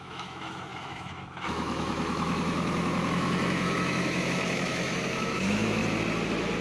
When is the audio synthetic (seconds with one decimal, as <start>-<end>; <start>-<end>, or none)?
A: 0.0-5.8